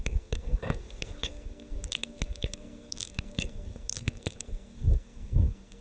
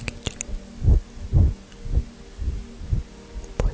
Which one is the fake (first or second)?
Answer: first